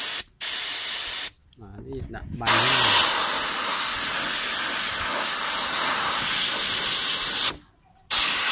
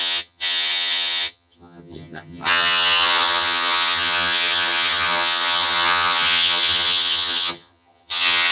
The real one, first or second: first